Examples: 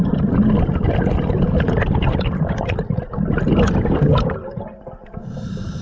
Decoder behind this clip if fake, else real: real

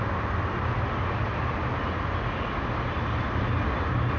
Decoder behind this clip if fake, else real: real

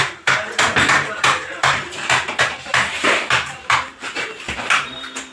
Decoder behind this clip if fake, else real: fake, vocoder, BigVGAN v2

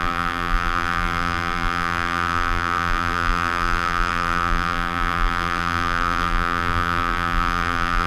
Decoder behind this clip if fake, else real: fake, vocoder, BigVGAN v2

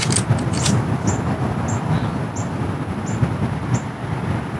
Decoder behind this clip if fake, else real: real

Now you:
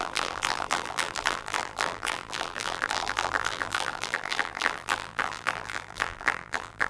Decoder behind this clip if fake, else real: fake, vocoder, BigVGAN v2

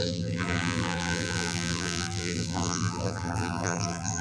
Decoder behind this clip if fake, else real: fake, vocoder, BigVGAN v2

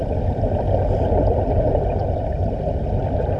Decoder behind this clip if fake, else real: fake, vocoder, BigVGAN v2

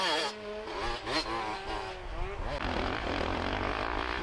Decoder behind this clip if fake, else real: real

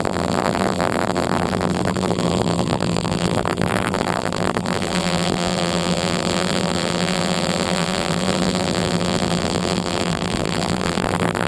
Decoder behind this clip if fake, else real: fake, vocoder, BigVGAN v2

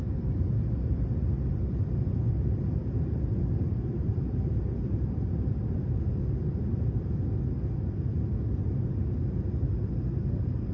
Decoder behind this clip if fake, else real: real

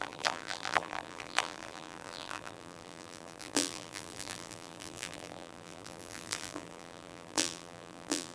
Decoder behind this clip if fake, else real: fake, vocoder, BigVGAN v2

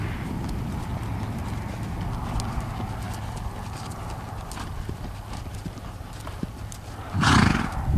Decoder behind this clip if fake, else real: real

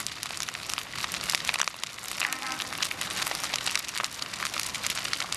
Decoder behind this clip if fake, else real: real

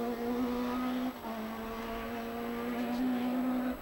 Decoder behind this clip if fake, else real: real